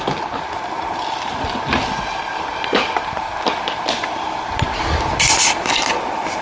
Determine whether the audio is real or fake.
real